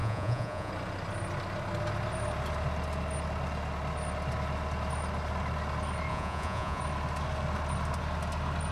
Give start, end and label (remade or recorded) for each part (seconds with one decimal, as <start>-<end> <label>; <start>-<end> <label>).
0.0-0.7 remade; 0.7-6.1 recorded; 6.1-6.8 remade; 6.8-8.7 recorded